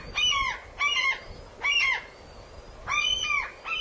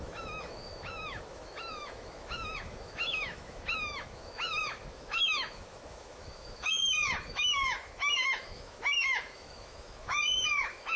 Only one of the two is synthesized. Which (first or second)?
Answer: second